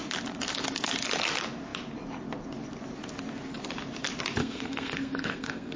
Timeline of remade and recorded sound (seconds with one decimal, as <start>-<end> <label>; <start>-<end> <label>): 0.0-4.4 recorded; 4.4-5.8 remade

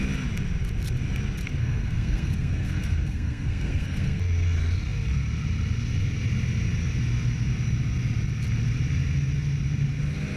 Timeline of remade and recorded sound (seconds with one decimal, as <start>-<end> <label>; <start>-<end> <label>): 0.0-1.6 recorded; 1.6-4.2 remade; 4.2-10.4 recorded

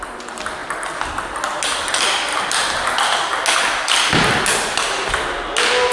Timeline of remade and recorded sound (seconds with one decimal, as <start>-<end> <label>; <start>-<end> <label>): 0.0-5.9 recorded

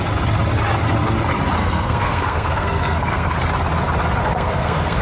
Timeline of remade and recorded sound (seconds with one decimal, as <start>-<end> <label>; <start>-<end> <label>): 0.0-1.6 recorded; 1.6-3.4 remade; 3.4-4.2 recorded; 4.2-5.0 remade

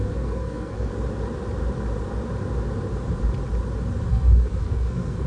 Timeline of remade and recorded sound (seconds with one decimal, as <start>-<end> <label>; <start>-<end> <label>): 0.0-0.9 remade; 0.9-4.1 recorded; 4.1-5.3 remade